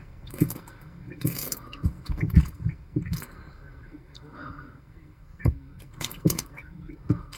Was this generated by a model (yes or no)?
yes